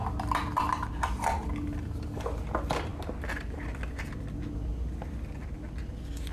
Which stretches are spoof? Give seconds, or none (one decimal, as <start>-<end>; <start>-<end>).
none